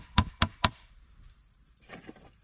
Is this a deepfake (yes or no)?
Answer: yes